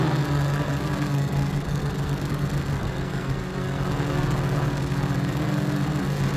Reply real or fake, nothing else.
fake